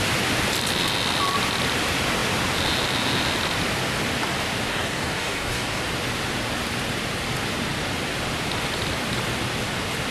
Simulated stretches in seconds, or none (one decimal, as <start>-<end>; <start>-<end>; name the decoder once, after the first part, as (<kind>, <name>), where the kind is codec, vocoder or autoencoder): 4.7-5.8 (codec, DAC)

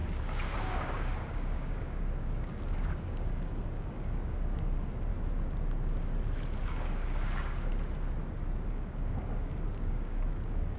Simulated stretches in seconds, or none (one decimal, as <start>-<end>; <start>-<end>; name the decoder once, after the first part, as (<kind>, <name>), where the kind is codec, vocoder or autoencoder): 0.0-5.1 (codec, DAC); 6.6-7.7; 8.7-10.8

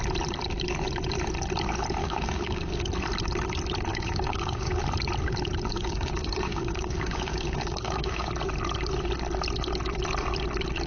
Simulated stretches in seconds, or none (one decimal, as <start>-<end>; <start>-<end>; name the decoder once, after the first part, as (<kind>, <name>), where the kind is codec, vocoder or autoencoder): 2.0-2.9 (codec, DAC); 3.9-4.8; 5.7-8.3

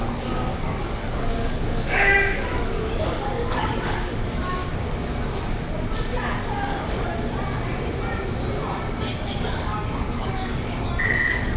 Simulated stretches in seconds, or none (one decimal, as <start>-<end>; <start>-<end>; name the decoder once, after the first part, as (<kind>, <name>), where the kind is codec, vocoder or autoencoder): 0.0-4.6 (codec, DAC); 6.3-7.1; 9.1-11.6

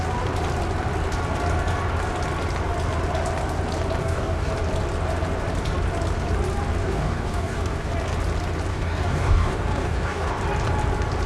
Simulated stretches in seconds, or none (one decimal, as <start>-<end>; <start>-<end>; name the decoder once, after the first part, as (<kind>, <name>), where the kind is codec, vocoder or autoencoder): 4.0-4.5 (codec, DAC); 6.8-7.9; 8.7-10.4

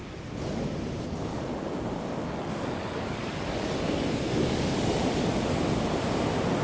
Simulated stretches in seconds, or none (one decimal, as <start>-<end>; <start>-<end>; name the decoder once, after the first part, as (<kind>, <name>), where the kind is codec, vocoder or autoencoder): 1.3-5.3 (codec, DAC)